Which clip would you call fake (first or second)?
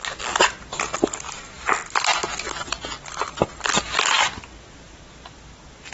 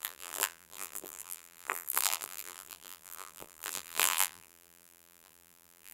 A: second